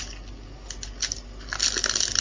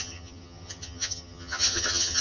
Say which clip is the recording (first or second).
first